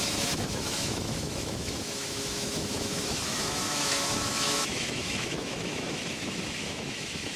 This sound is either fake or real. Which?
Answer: fake